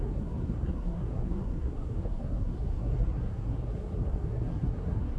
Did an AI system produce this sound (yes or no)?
yes